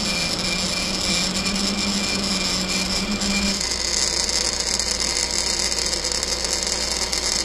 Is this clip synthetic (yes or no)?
no